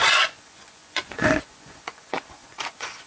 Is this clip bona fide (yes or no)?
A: no